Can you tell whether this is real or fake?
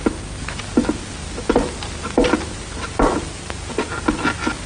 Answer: real